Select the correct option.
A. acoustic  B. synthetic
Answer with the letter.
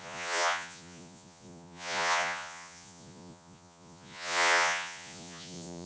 B